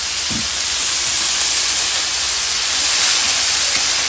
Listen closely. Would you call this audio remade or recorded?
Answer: remade